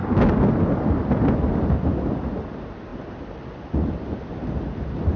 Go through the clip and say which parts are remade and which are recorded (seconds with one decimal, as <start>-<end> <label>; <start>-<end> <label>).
0.0-5.2 recorded